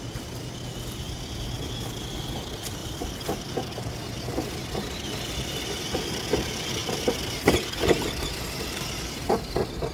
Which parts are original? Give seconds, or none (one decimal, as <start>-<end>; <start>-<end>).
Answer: 0.0-2.8; 5.3-9.9